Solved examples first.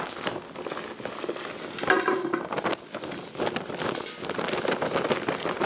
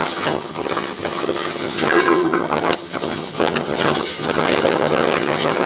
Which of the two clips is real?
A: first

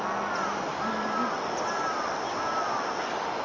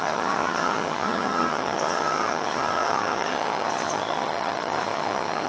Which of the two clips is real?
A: first